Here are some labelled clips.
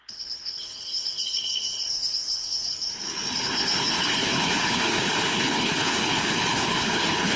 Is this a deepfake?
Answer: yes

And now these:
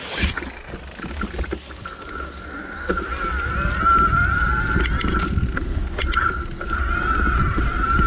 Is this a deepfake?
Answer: no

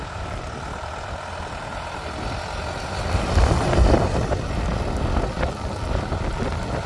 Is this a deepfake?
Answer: no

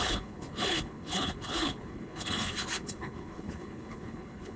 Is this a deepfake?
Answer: yes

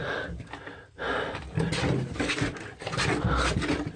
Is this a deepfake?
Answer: no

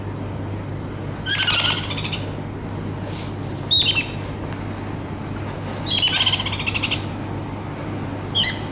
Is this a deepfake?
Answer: no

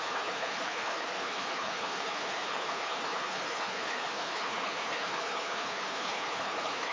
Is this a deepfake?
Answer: yes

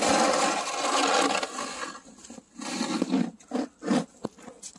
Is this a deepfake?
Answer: no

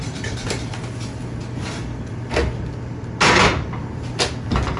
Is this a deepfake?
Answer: no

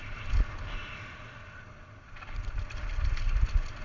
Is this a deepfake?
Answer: no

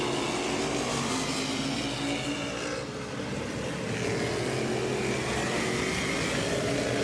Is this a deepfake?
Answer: no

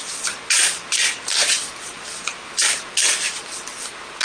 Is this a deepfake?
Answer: no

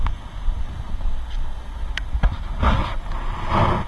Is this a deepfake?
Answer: no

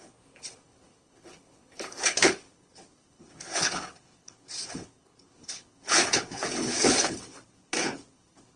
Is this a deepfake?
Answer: yes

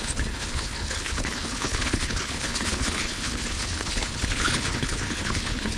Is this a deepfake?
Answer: yes